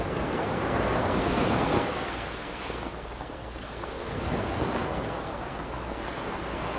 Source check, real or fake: fake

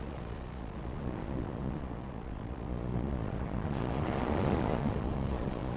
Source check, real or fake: fake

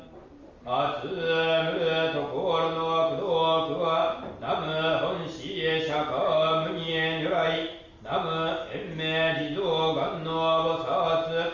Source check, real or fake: real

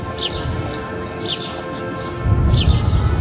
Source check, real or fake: real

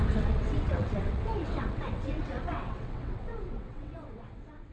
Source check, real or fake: fake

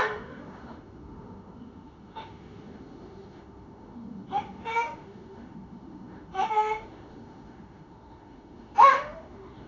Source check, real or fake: fake